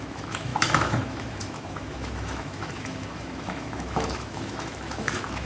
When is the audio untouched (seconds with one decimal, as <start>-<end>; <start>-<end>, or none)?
none